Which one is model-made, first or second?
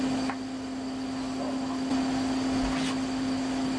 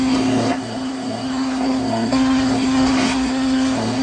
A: second